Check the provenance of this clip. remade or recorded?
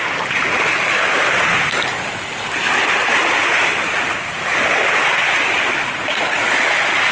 recorded